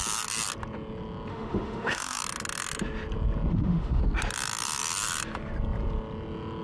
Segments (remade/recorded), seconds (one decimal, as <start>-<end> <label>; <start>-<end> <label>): 0.0-1.3 recorded; 1.3-2.2 remade; 2.2-3.5 recorded; 3.5-4.0 remade; 4.0-6.6 recorded